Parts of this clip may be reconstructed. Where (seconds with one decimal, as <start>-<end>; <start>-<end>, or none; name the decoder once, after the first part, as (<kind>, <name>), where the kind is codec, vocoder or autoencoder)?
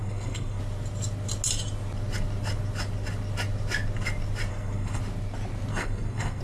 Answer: 0.0-0.6 (codec, SNAC); 4.5-5.0; 5.7-6.4